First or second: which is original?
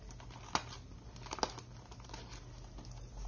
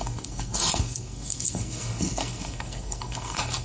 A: first